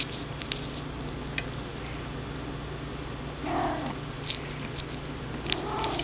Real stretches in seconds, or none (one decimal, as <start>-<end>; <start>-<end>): 0.0-6.0